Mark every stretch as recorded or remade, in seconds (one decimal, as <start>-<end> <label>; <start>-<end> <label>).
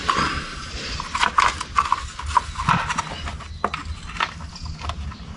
0.0-1.3 remade; 1.3-5.4 recorded